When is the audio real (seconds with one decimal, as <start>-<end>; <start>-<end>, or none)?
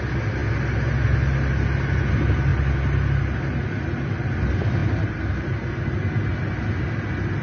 0.0-7.4